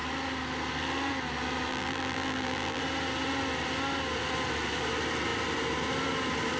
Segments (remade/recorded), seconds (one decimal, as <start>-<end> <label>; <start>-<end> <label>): 0.0-1.7 recorded; 1.7-2.8 remade; 2.8-6.6 recorded